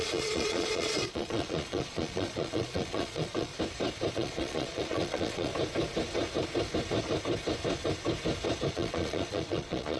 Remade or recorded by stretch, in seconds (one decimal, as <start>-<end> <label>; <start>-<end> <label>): 0.0-3.5 remade; 3.5-4.1 recorded; 4.1-5.5 remade; 5.5-8.7 recorded; 8.7-10.0 remade